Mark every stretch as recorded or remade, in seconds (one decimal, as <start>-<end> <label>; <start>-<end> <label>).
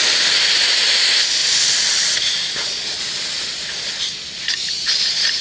0.0-5.4 recorded